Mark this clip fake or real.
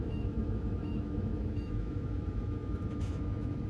fake